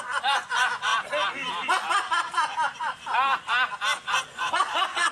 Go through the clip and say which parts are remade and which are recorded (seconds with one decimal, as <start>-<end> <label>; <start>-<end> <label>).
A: 0.0-0.9 remade; 0.9-4.0 recorded; 4.0-5.1 remade